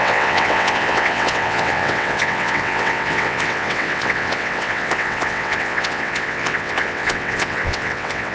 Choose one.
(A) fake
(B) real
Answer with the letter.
A